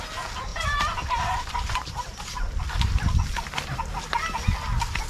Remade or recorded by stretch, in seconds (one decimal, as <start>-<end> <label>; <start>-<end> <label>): 0.0-0.5 recorded; 0.5-2.7 remade; 2.7-5.1 recorded